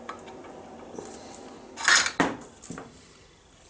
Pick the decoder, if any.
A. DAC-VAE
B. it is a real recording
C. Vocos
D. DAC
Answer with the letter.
B